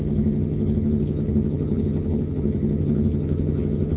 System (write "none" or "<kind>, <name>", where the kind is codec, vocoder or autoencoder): vocoder, HiFi-GAN